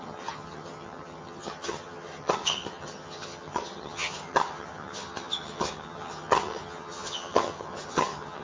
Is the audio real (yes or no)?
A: no